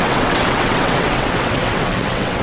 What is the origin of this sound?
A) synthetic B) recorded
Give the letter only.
A